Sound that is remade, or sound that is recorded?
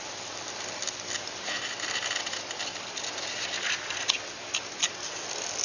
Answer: recorded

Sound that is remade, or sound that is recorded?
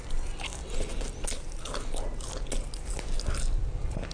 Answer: recorded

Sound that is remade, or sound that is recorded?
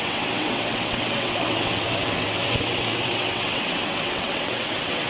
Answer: remade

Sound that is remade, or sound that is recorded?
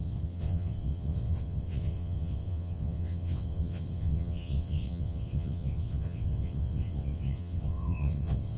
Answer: remade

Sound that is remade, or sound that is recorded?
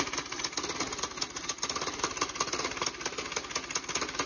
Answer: recorded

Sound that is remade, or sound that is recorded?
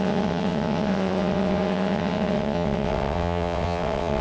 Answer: remade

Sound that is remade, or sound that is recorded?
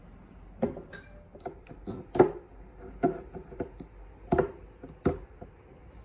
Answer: recorded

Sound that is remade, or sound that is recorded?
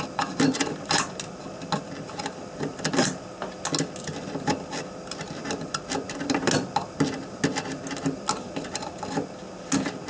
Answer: recorded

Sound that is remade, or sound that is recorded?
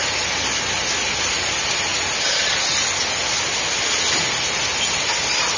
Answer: recorded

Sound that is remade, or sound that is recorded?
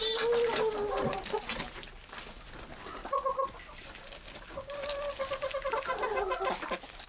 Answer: recorded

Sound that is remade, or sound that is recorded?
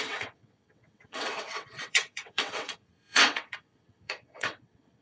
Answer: remade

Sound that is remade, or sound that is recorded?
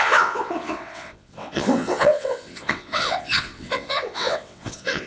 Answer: remade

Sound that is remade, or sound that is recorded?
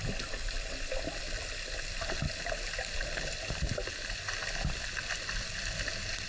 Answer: recorded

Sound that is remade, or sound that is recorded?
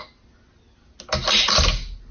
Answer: recorded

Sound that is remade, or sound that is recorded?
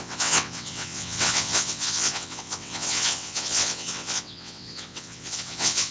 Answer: remade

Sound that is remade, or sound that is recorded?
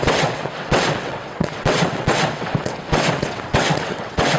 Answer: remade